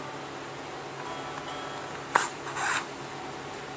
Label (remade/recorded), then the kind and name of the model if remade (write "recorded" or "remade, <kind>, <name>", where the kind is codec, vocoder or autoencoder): recorded